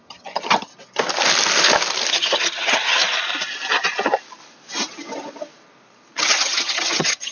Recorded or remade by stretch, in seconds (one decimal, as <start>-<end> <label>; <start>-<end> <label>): 0.0-0.7 remade; 0.7-2.1 recorded; 2.1-3.0 remade; 3.0-6.2 recorded; 6.2-7.3 remade